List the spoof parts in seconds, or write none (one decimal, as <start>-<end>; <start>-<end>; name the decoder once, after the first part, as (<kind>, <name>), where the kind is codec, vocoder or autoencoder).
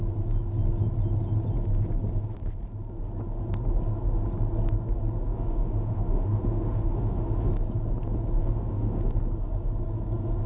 5.3-7.5 (autoencoder, DAC-VAE); 8.4-9.2